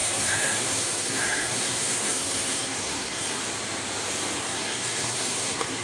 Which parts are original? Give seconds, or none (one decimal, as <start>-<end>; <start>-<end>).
3.4-4.4